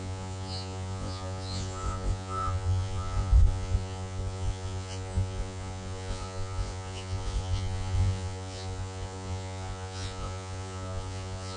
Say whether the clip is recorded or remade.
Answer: remade